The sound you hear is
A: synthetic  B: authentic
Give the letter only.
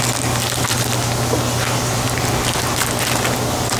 B